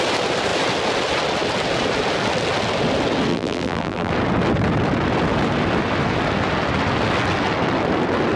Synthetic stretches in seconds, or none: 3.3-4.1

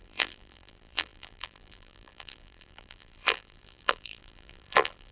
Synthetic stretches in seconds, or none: 0.0-5.1

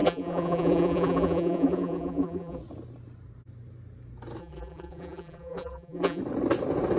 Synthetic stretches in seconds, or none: 0.0-2.6; 4.4-6.2

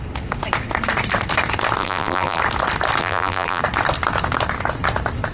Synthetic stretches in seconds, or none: 1.8-2.4; 3.0-3.6